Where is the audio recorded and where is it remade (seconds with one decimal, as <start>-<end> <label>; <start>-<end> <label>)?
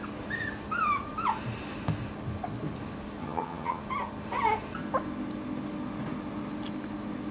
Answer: 0.0-3.2 recorded; 3.2-3.8 remade; 3.8-7.3 recorded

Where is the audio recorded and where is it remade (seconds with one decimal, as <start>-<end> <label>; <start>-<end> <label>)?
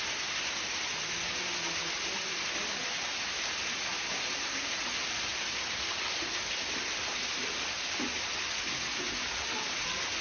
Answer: 0.0-10.2 recorded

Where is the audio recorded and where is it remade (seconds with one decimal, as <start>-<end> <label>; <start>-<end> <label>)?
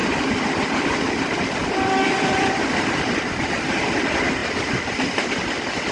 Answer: 0.0-3.0 remade; 3.0-4.4 recorded; 4.4-5.5 remade; 5.5-5.9 recorded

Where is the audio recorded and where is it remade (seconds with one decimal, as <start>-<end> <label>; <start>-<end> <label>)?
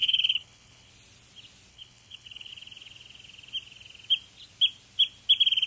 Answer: 0.0-0.9 remade; 0.9-1.7 recorded; 1.7-2.5 remade; 2.5-5.7 recorded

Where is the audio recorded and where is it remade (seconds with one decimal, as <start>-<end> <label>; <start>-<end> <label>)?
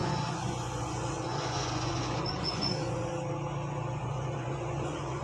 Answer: 0.0-3.1 remade; 3.1-3.8 recorded; 3.8-5.2 remade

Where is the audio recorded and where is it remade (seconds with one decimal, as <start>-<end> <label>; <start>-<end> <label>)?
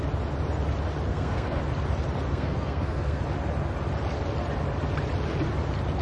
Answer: 0.0-1.1 recorded; 1.1-1.6 remade; 1.6-2.3 recorded; 2.3-3.2 remade; 3.2-6.0 recorded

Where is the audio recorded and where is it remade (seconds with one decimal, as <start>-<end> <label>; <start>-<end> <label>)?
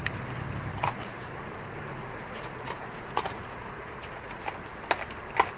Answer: 0.0-0.7 recorded; 0.7-1.3 remade; 1.3-1.9 recorded; 1.9-4.4 remade; 4.4-5.6 recorded